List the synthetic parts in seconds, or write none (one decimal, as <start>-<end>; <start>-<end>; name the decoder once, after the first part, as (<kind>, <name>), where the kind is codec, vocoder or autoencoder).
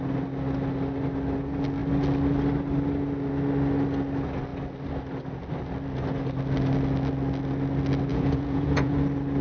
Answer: 8.1-9.0 (vocoder, Vocos)